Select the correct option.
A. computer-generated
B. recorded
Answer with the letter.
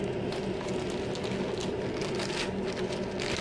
B